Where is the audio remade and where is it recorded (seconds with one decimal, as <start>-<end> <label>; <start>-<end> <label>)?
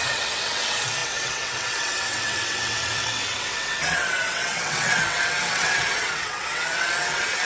0.0-7.5 remade